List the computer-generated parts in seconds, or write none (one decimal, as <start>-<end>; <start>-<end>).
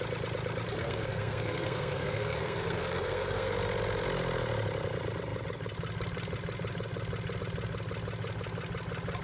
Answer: 0.8-3.5